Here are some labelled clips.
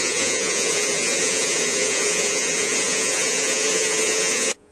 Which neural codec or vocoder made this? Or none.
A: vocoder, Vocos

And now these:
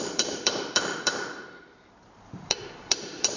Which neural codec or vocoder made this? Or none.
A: vocoder, BigVGAN v2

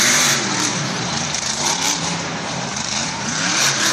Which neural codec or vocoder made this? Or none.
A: vocoder, BigVGAN v2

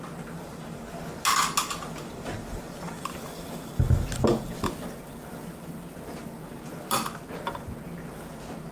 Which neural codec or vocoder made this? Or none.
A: none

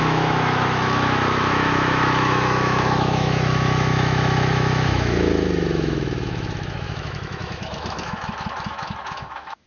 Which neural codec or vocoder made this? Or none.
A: autoencoder, DAC-VAE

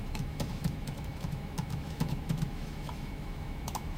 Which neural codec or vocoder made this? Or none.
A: autoencoder, DAC-VAE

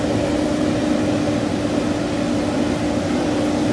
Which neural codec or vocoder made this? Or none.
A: none